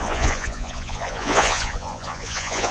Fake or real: fake